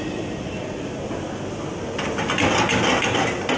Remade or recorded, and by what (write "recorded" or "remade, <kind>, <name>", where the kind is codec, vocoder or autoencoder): recorded